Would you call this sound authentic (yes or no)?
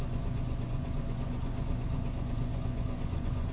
no